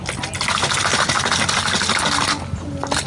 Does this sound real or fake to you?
real